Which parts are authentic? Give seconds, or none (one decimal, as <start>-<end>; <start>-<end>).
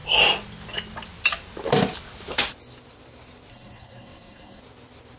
0.0-3.5; 4.6-5.2